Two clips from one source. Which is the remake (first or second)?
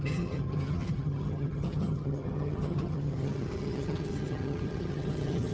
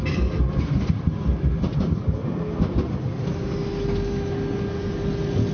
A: first